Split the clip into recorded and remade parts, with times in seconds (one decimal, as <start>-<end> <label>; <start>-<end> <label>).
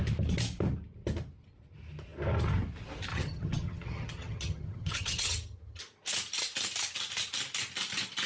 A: 0.0-3.1 recorded; 3.1-5.8 remade; 5.8-8.3 recorded